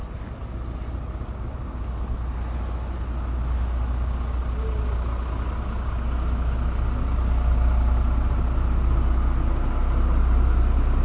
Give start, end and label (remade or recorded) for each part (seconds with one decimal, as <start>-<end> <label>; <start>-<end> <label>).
0.0-11.0 recorded